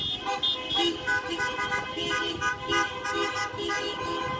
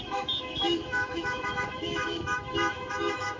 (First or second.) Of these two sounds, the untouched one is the first